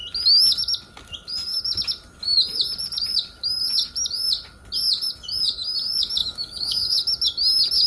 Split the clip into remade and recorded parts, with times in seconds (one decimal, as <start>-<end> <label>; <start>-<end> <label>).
0.0-6.2 recorded; 6.2-7.0 remade; 7.0-7.9 recorded